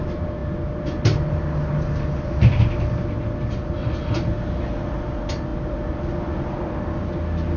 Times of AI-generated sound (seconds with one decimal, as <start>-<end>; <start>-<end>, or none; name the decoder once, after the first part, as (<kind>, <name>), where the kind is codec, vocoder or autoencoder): none